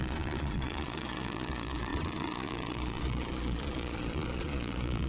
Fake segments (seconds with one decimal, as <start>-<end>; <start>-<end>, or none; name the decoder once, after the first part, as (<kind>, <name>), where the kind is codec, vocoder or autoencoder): 0.0-5.1 (vocoder, Vocos)